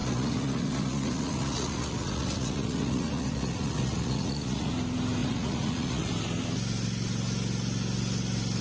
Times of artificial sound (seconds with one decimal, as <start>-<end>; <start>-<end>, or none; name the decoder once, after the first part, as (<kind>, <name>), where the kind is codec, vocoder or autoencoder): 0.0-4.7 (vocoder, Vocos); 5.2-6.1